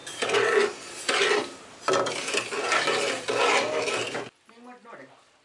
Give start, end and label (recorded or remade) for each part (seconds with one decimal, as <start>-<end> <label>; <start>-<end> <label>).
0.0-5.4 recorded

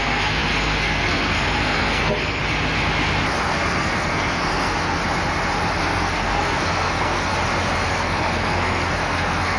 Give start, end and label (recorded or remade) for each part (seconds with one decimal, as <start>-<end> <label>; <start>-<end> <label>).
0.0-2.4 remade; 2.4-3.3 recorded; 3.3-5.0 remade; 5.0-5.8 recorded; 5.8-7.3 remade; 7.3-7.9 recorded; 7.9-9.6 remade

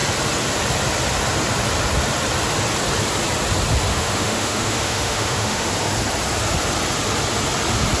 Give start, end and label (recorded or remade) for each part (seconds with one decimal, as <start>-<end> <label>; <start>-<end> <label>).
0.0-3.9 recorded; 3.9-5.7 remade; 5.7-8.0 recorded